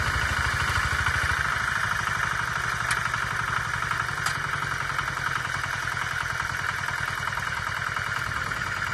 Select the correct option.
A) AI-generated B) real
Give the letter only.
B